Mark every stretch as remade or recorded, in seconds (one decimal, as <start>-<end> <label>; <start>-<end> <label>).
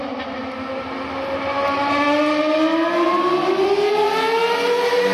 0.0-5.1 recorded